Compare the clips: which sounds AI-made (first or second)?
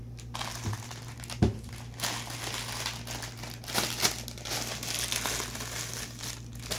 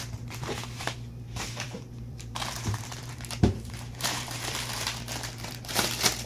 second